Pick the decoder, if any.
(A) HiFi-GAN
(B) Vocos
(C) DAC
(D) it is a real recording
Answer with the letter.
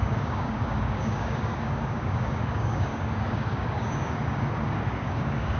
C